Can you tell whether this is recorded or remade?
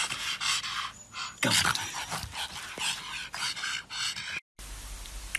recorded